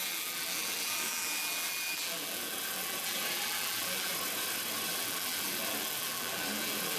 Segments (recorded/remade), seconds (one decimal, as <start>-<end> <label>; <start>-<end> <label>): 0.0-4.1 remade; 4.1-4.9 recorded; 4.9-7.0 remade